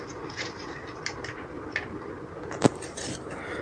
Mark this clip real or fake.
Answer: real